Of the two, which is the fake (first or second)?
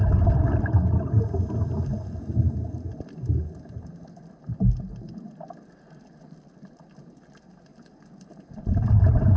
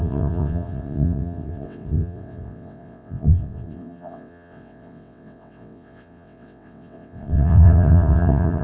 second